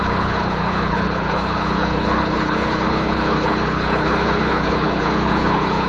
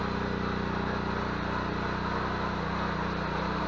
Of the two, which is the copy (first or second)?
first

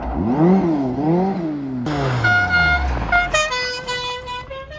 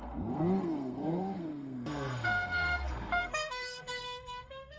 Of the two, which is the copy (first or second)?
second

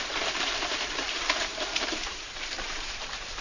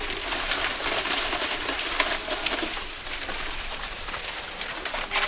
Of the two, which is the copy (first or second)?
first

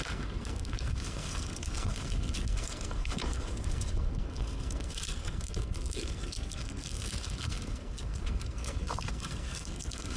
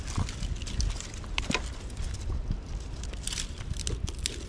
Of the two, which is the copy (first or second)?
first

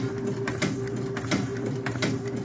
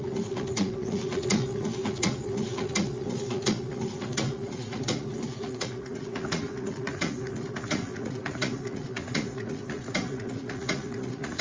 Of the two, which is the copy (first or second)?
second